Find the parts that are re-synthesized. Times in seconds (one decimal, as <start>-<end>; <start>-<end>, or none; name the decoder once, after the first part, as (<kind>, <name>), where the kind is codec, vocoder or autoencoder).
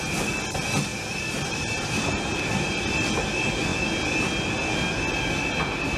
0.9-2.8 (vocoder, BigVGAN v2)